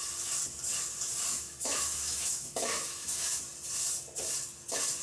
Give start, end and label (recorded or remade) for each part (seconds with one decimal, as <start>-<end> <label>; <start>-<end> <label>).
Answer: 0.0-1.3 recorded; 1.3-3.4 remade; 3.4-5.0 recorded